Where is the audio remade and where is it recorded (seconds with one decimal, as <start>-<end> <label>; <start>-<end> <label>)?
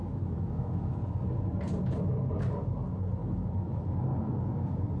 0.0-1.0 remade; 1.0-3.2 recorded; 3.2-3.8 remade; 3.8-5.0 recorded